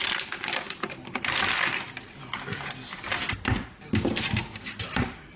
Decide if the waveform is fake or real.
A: real